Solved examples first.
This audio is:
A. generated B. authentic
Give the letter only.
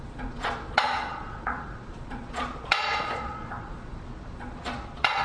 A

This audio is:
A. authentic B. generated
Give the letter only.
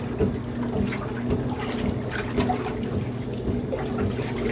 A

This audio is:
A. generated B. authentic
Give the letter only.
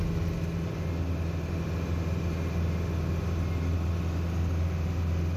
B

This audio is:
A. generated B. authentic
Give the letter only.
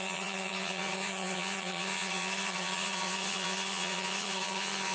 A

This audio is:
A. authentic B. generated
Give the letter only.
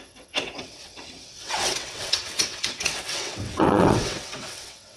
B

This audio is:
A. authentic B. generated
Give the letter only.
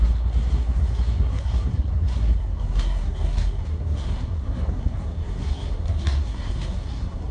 B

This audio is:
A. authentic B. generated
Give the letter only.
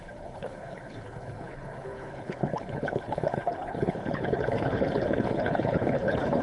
B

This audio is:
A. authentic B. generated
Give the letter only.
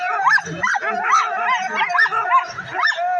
A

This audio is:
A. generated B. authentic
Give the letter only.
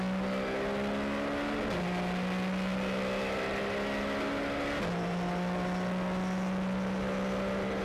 B